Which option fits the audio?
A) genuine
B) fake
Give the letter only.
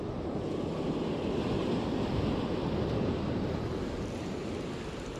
A